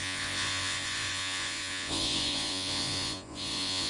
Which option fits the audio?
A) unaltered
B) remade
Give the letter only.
B